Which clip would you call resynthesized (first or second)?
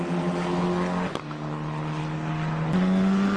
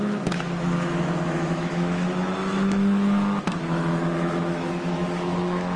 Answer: second